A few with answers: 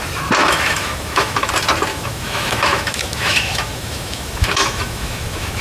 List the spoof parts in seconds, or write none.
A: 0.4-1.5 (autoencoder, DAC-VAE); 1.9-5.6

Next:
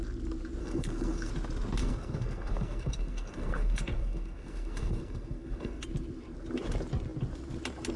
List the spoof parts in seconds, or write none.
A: 0.6-1.3 (codec, SNAC); 1.8-5.8

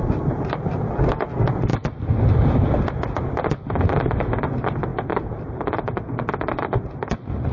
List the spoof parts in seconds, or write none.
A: none

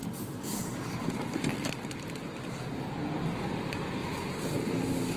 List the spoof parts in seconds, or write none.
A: 0.0-2.0 (vocoder, BigVGAN v2)

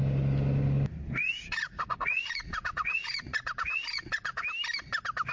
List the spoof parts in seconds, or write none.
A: 1.2-4.4 (vocoder, Vocos)

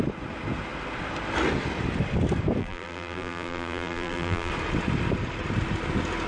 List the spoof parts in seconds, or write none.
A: 2.6-4.5 (vocoder, BigVGAN v2)

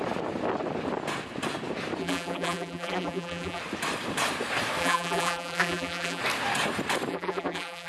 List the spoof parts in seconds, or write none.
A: 2.0-3.6 (vocoder, BigVGAN v2); 4.8-6.2; 7.1-7.9